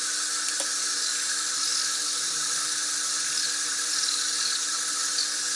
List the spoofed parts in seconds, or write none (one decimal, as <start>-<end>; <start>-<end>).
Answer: 1.1-4.4